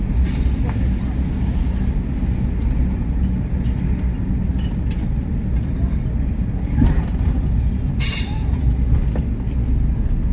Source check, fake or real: real